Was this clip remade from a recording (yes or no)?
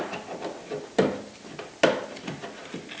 no